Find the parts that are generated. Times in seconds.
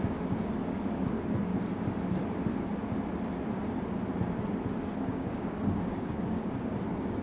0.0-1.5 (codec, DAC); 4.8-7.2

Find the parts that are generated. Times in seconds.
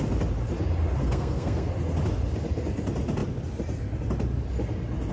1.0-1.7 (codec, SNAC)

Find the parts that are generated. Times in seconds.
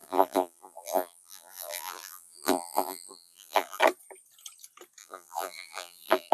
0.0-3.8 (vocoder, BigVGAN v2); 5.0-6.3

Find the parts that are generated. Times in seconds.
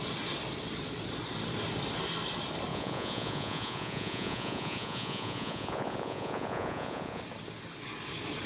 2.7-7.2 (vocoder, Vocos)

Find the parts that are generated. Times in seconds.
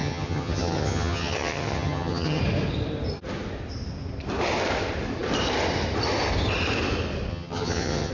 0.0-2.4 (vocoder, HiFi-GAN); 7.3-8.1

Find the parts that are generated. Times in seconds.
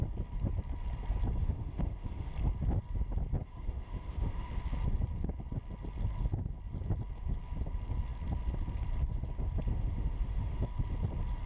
1.4-2.3 (autoencoder, DAC-VAE); 3.4-4.6; 9.7-10.6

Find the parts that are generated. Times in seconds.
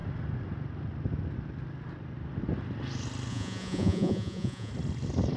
3.3-4.7 (vocoder, Vocos)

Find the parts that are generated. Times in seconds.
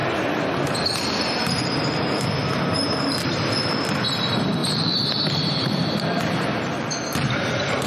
4.6-7.9 (vocoder, BigVGAN v2)